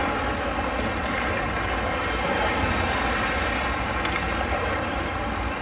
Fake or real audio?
real